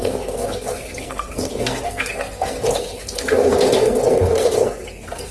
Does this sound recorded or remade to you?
remade